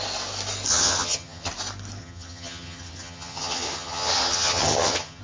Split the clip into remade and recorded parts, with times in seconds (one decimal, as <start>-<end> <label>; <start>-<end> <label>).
0.0-0.7 recorded; 0.7-1.5 remade; 1.5-2.0 recorded; 2.0-5.2 remade